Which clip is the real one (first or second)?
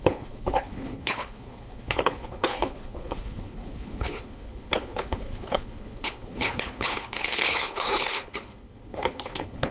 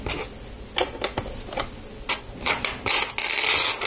second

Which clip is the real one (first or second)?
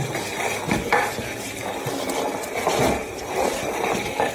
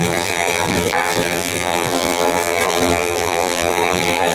first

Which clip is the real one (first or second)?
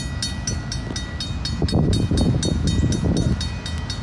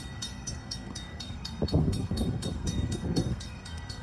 first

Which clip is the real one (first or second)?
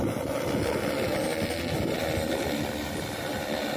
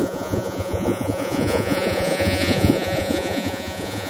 first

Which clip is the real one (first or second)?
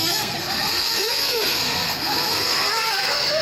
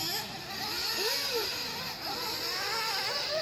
second